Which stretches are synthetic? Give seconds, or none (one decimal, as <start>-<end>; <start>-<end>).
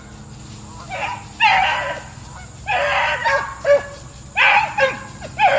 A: none